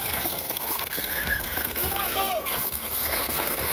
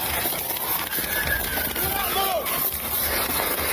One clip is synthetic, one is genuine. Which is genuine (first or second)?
second